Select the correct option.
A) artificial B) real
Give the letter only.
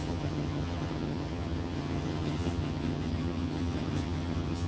A